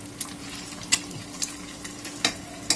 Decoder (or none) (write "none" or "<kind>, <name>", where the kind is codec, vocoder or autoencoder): none